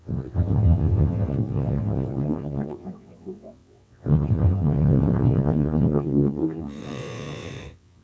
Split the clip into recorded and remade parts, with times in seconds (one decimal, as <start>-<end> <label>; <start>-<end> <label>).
0.0-8.0 remade